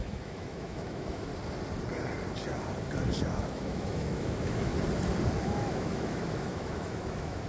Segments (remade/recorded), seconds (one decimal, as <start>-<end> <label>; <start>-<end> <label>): 0.0-1.3 remade; 1.3-3.3 recorded; 3.3-4.7 remade; 4.7-5.3 recorded; 5.3-7.5 remade